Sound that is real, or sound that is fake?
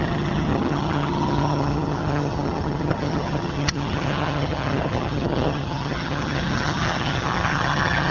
fake